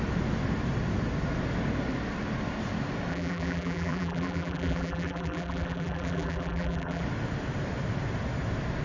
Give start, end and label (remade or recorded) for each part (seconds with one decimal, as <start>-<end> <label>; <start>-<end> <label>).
0.0-3.1 recorded; 3.1-7.0 remade; 7.0-8.8 recorded